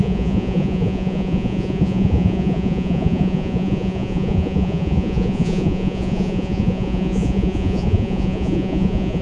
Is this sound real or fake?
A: fake